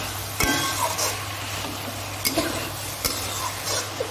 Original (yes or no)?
yes